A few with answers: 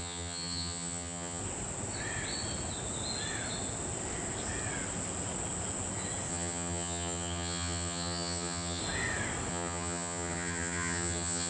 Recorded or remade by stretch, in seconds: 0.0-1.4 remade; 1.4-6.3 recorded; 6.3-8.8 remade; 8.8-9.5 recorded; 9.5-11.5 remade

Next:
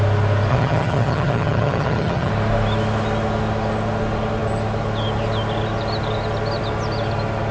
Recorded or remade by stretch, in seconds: 0.0-0.5 recorded; 0.5-2.3 remade; 2.3-7.5 recorded

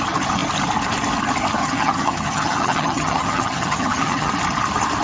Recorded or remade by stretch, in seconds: 0.0-1.6 recorded; 1.6-4.3 remade; 4.3-5.0 recorded

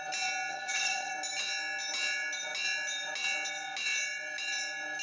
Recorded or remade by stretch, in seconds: 0.0-0.5 recorded; 0.5-1.1 remade; 1.1-5.0 recorded

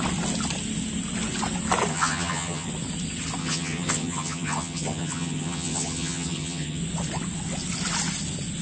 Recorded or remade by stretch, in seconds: 0.0-1.9 recorded; 1.9-2.7 remade; 2.7-3.4 recorded; 3.4-6.8 remade; 6.8-8.6 recorded

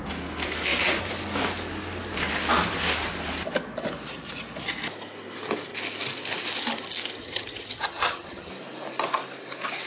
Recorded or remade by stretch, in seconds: 0.0-7.2 recorded; 7.2-8.5 remade; 8.5-9.9 recorded